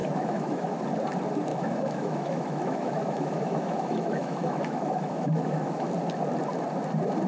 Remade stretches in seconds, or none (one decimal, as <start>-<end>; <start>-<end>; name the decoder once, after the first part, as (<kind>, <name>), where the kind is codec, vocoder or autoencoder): 0.0-0.8 (autoencoder, DAC-VAE); 1.5-5.9